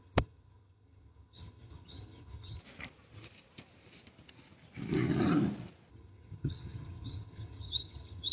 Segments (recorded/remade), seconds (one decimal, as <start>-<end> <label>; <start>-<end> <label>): 0.0-2.6 remade; 2.6-5.9 recorded; 5.9-8.3 remade